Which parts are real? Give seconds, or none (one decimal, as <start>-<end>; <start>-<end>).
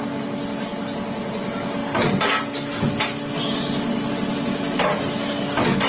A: 0.0-5.9